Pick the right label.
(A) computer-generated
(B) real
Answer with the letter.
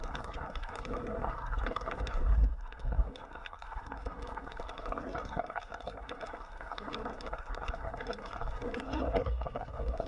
A